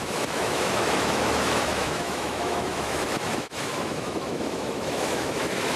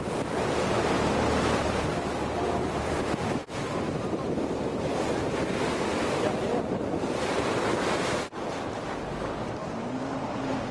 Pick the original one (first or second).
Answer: second